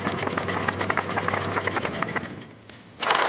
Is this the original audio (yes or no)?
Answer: yes